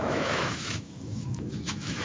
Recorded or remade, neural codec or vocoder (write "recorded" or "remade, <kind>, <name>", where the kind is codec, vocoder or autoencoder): remade, autoencoder, DAC-VAE